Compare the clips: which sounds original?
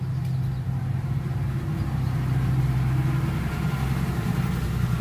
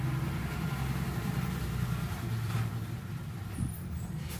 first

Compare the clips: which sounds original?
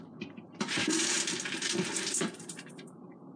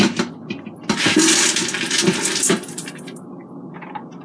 second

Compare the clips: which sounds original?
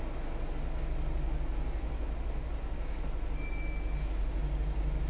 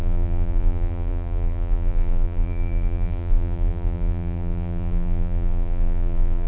first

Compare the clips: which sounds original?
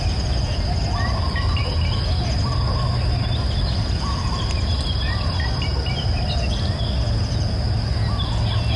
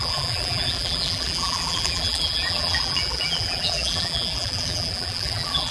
first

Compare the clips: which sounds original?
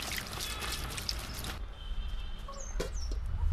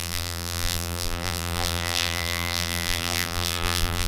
first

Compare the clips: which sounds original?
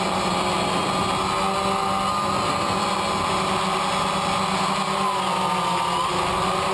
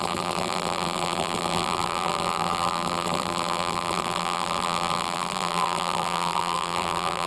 first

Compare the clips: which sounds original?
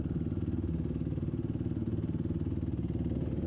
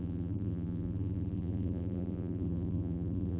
first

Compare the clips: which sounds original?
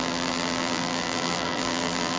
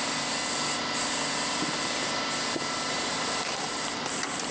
second